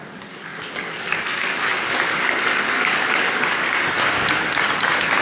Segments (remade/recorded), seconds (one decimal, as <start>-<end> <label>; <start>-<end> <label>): 0.0-5.2 remade